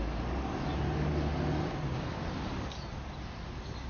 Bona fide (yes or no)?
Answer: yes